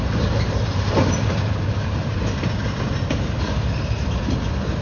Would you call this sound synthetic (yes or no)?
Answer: no